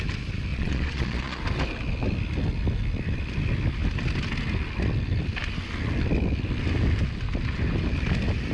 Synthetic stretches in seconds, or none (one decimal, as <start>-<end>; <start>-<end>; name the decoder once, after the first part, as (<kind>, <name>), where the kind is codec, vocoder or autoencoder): 0.5-1.4 (vocoder, Vocos)